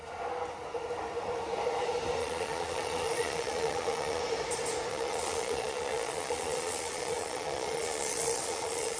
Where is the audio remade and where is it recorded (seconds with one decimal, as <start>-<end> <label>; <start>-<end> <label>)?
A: 0.0-2.2 recorded; 2.2-4.2 remade; 4.2-4.9 recorded; 4.9-9.0 remade